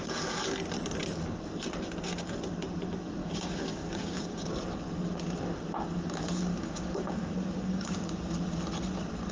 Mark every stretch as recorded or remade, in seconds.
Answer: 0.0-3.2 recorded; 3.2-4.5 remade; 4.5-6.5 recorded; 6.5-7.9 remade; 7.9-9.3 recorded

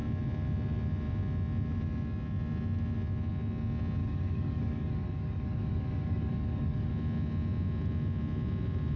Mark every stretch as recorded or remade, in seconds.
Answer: 0.0-4.0 recorded; 4.0-6.9 remade; 6.9-9.0 recorded